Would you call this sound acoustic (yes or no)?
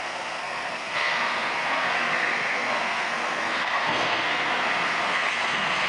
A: no